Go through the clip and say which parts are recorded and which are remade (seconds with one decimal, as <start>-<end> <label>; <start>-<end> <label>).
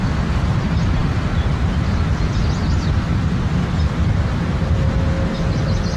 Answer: 0.0-6.0 recorded